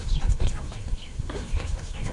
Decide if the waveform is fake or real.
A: fake